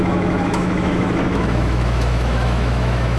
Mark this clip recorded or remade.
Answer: remade